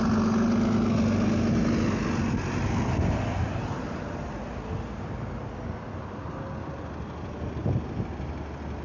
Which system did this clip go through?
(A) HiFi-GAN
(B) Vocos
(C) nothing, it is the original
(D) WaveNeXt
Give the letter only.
C